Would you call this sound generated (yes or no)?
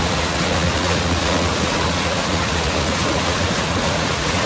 yes